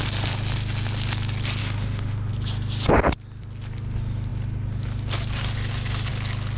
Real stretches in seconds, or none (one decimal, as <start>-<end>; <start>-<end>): 0.0-1.6; 2.3-6.6